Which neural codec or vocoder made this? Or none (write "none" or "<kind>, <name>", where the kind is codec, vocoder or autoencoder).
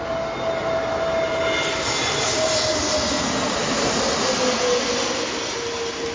none